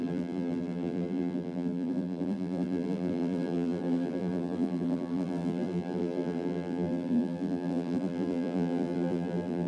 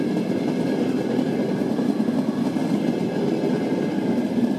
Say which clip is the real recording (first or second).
second